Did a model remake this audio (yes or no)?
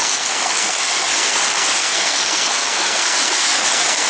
yes